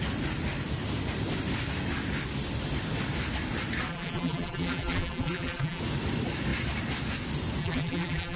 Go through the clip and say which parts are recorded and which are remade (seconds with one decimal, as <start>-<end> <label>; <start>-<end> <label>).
0.0-3.9 recorded; 3.9-5.8 remade; 5.8-7.6 recorded; 7.6-8.4 remade